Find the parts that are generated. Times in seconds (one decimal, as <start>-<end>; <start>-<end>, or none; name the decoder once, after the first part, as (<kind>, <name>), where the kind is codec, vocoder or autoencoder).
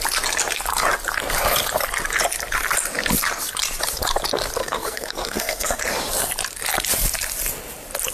4.6-5.8 (codec, SNAC)